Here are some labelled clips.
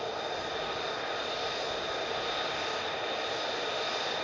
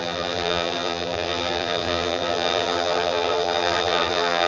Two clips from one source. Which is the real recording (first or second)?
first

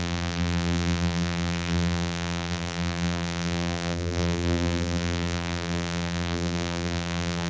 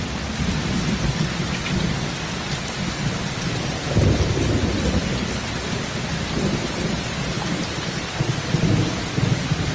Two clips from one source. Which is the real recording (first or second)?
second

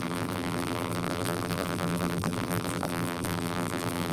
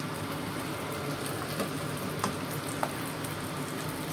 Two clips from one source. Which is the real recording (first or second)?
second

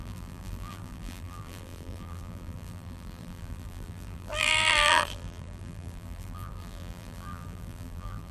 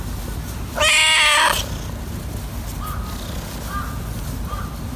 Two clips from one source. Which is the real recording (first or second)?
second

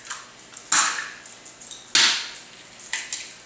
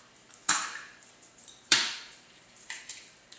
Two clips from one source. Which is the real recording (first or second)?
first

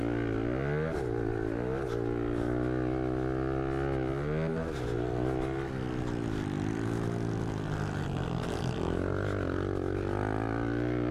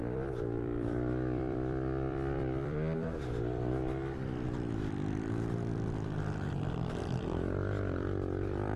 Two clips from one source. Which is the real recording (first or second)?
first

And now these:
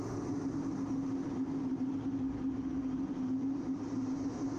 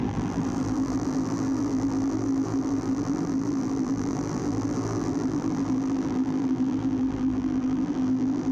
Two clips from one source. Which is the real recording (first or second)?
first